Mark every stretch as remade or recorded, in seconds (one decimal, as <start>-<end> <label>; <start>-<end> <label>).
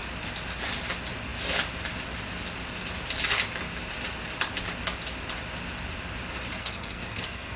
0.0-6.6 recorded; 6.6-7.6 remade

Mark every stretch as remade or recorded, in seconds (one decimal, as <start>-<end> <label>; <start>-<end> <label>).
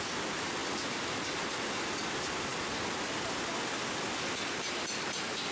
0.0-5.5 recorded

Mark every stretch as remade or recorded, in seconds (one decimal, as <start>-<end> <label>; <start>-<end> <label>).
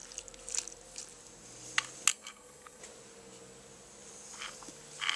0.0-2.1 recorded; 2.1-2.8 remade; 2.8-5.2 recorded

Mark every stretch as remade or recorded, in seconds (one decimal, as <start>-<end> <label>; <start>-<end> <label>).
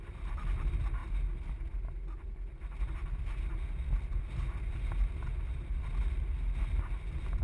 0.0-7.4 recorded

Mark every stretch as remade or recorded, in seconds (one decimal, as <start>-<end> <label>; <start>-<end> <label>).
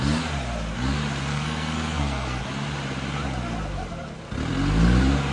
0.0-1.3 recorded; 1.3-2.4 remade; 2.4-5.3 recorded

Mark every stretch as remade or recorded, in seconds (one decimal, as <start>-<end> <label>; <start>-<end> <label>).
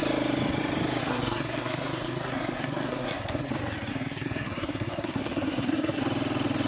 0.0-1.0 recorded; 1.0-3.5 remade; 3.5-3.9 recorded; 3.9-6.0 remade; 6.0-6.7 recorded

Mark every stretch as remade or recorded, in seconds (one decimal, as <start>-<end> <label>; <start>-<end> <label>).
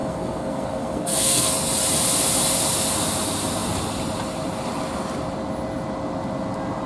0.0-1.5 remade; 1.5-6.9 recorded